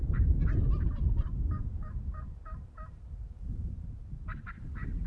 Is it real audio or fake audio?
fake